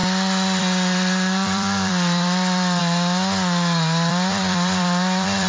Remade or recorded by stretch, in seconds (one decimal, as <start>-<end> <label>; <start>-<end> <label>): 0.0-0.6 recorded; 0.6-2.8 remade; 2.8-4.1 recorded; 4.1-5.5 remade